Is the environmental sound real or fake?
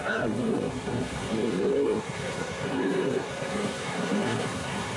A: fake